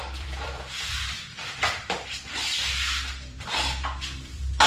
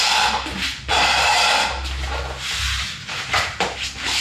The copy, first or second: first